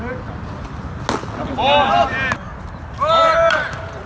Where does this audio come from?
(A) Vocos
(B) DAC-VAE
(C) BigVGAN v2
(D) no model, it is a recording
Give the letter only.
D